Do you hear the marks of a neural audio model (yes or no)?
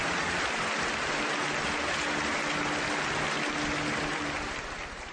no